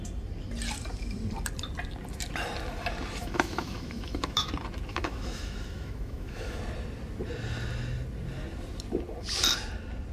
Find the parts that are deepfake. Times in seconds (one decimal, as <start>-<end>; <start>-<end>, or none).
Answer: 3.2-4.5; 4.9-6.6